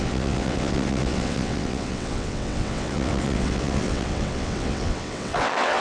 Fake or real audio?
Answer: fake